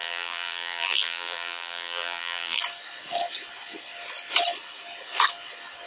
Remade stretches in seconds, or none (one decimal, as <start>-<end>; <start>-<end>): 0.0-2.6